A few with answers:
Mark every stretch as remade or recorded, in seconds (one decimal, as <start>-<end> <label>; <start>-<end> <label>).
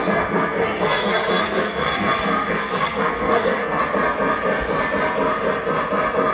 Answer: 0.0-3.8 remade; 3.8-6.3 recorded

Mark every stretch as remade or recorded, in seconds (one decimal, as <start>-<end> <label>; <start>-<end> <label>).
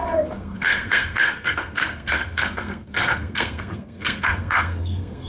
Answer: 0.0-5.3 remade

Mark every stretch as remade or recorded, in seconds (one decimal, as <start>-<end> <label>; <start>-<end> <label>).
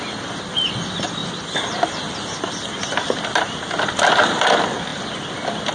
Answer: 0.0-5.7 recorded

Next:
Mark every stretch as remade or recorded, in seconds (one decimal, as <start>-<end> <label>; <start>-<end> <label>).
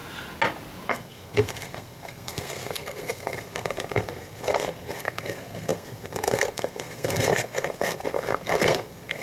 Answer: 0.0-0.9 recorded; 0.9-9.2 remade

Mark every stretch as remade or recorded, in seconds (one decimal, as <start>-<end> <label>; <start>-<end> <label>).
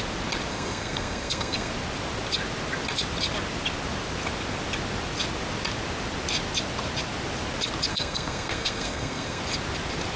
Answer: 0.0-0.5 recorded; 0.5-1.7 remade; 1.7-7.9 recorded; 7.9-9.4 remade; 9.4-10.2 recorded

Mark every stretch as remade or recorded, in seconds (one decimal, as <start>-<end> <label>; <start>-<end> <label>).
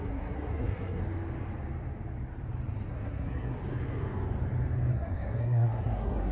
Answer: 0.0-1.0 remade; 1.0-2.9 recorded; 2.9-3.6 remade; 3.6-4.9 recorded; 4.9-6.3 remade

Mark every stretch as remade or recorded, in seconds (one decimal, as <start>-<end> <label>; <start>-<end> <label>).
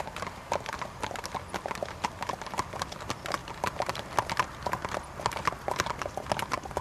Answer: 0.0-3.4 recorded; 3.4-4.2 remade; 4.2-6.8 recorded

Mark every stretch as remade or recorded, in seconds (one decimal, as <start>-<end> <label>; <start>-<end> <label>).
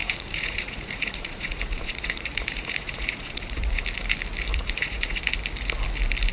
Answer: 0.0-3.8 remade; 3.8-4.5 recorded; 4.5-5.2 remade; 5.2-6.3 recorded